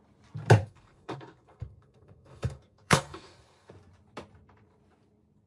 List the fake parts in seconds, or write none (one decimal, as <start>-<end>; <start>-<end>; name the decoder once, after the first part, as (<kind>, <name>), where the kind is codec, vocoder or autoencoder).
0.6-3.7 (codec, SNAC)